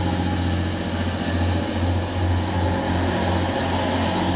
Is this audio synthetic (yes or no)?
no